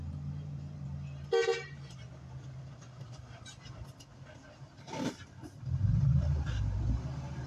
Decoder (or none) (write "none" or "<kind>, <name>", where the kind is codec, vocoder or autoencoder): none